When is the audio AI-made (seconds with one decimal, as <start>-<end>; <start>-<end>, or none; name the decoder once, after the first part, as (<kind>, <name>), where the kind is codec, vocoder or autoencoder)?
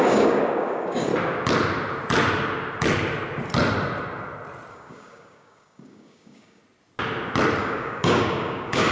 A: 0.0-1.1 (codec, DAC); 4.7-6.6; 7.6-8.9